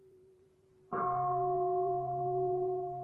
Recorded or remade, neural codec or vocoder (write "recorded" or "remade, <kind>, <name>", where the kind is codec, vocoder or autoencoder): remade, vocoder, BigVGAN v2